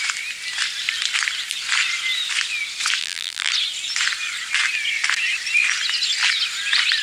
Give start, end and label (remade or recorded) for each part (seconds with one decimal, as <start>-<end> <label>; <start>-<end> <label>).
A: 0.0-3.0 recorded; 3.0-3.5 remade; 3.5-7.0 recorded